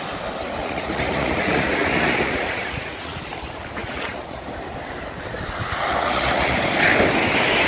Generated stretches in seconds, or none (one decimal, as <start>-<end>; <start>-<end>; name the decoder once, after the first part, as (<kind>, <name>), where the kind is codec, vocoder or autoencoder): 0.6-3.2 (vocoder, Vocos); 3.8-4.4; 5.9-6.6